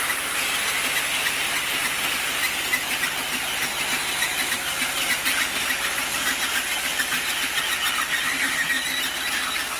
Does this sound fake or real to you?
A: real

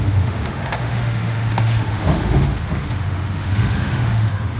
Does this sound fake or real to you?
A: fake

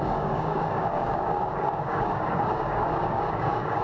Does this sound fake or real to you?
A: fake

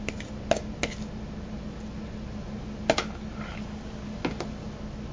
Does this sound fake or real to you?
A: real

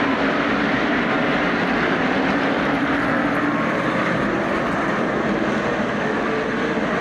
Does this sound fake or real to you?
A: fake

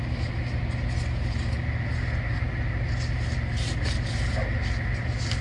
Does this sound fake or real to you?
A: real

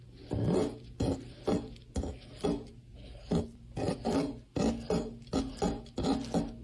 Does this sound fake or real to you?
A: real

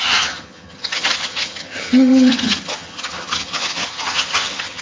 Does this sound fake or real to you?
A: fake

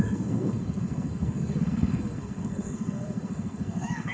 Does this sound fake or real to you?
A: fake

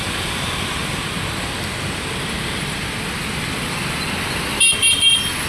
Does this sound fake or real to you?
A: real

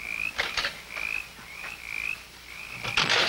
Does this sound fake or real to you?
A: real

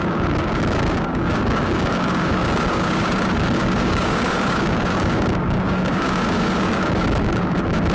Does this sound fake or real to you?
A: fake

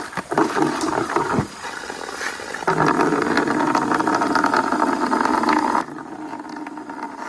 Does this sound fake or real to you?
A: real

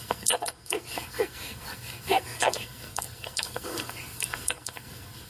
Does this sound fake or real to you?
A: fake